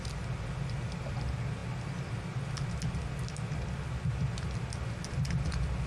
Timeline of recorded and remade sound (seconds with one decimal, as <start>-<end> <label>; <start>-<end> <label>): 0.0-5.9 recorded

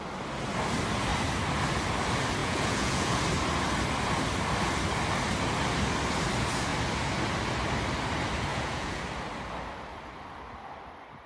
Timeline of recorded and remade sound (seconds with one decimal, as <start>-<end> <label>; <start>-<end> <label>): 0.0-2.4 recorded; 2.4-3.2 remade; 3.2-8.5 recorded; 8.5-9.0 remade; 9.0-11.3 recorded